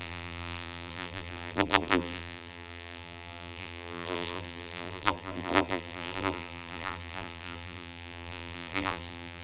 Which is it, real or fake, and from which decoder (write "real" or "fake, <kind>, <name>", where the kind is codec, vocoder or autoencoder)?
fake, vocoder, BigVGAN v2